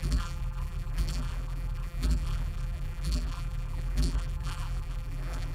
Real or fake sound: fake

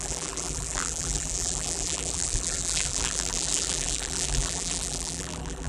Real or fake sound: fake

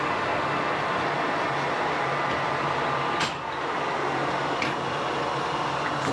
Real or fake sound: real